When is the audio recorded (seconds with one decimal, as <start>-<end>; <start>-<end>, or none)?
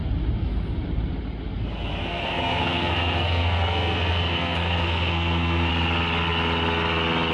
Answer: 0.0-2.0; 5.7-7.3